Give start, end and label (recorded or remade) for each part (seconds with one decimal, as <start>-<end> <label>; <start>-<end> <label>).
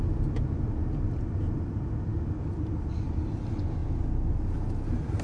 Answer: 0.0-5.2 recorded